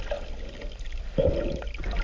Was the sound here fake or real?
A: real